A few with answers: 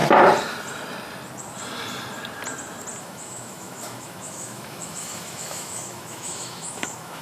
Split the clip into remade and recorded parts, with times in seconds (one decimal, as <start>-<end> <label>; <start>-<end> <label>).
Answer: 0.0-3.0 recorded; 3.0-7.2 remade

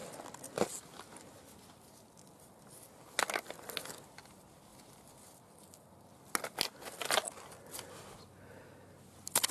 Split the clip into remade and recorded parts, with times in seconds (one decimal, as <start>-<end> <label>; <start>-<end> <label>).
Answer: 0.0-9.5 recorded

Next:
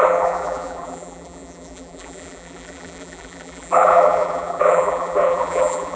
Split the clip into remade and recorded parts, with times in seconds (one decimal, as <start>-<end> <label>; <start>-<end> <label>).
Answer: 0.0-6.0 remade

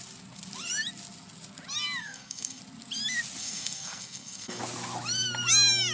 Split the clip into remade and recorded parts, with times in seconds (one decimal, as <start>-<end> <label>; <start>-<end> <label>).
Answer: 0.0-2.0 recorded; 2.0-2.6 remade; 2.6-3.4 recorded; 3.4-4.6 remade; 4.6-5.9 recorded

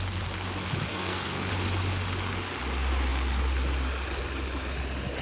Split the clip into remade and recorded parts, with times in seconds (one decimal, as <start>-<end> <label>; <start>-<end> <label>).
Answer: 0.0-0.9 recorded; 0.9-1.5 remade; 1.5-5.2 recorded

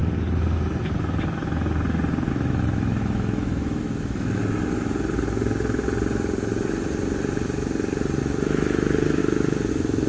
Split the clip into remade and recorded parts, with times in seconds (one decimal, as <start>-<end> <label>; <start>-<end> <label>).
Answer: 0.0-2.3 recorded; 2.3-4.4 remade; 4.4-8.2 recorded; 8.2-9.2 remade; 9.2-9.7 recorded; 9.7-10.1 remade

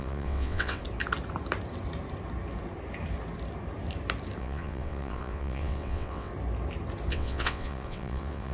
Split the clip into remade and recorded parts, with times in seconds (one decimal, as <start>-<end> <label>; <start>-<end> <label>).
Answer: 0.0-0.8 remade; 0.8-4.4 recorded; 4.4-6.3 remade; 6.3-7.1 recorded; 7.1-8.5 remade

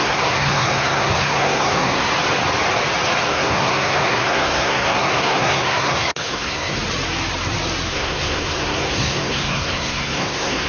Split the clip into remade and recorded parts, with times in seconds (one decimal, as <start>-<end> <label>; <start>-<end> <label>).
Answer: 0.0-2.1 remade; 2.1-3.3 recorded; 3.3-6.8 remade; 6.8-7.9 recorded; 7.9-10.7 remade